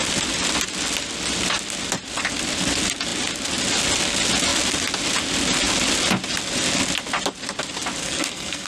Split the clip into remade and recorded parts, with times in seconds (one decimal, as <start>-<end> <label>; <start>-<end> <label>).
0.0-8.0 recorded; 8.0-8.7 remade